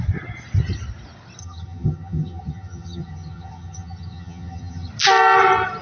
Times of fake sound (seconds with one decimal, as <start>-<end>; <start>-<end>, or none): 1.4-4.9